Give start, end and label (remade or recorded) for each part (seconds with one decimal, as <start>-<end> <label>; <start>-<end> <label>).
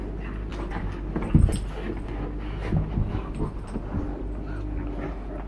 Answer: 0.0-5.5 recorded